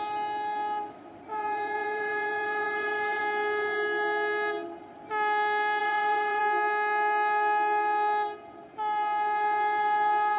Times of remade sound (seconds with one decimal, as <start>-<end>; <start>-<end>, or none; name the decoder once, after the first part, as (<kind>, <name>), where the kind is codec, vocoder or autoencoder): 1.3-3.2 (vocoder, Vocos); 5.8-6.4